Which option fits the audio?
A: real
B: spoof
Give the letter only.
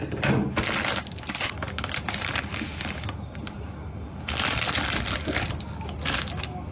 A